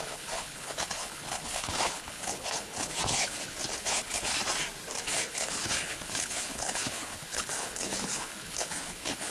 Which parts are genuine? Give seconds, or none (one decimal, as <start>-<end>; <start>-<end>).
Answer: 4.3-5.0